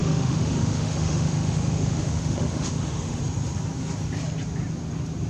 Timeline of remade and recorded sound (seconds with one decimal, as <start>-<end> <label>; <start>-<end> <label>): 0.0-3.2 remade; 3.2-5.3 recorded